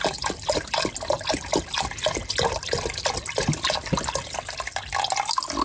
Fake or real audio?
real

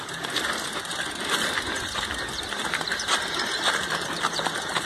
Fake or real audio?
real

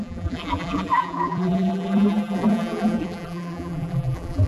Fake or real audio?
fake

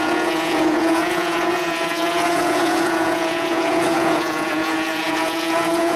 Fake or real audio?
fake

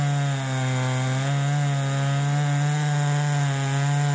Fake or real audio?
real